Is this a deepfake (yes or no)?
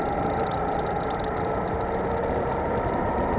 no